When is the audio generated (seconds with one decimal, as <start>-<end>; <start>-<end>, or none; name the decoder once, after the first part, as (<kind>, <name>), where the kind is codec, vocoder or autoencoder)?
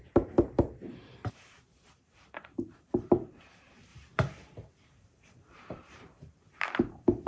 0.0-7.3 (vocoder, BigVGAN v2)